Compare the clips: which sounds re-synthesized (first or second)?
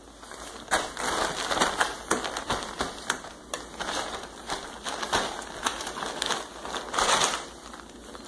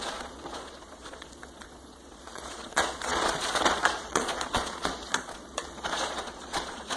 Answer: second